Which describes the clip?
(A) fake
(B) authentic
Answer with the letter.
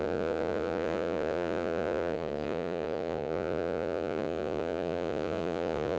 A